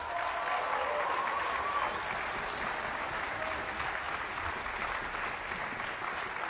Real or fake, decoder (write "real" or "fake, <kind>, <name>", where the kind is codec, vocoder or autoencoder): real